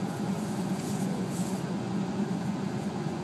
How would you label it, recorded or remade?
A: remade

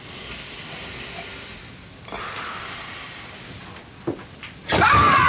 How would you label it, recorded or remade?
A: recorded